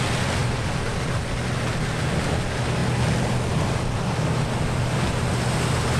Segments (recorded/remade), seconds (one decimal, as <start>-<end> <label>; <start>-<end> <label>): 0.0-0.4 recorded; 0.4-1.2 remade; 1.2-6.0 recorded